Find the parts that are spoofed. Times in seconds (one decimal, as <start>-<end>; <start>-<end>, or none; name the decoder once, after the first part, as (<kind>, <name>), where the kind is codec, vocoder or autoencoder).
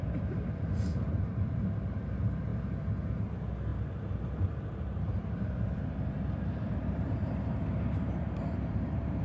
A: 3.7-9.2 (vocoder, BigVGAN v2)